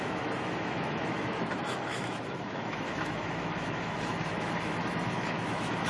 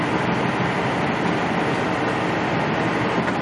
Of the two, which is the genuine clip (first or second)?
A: second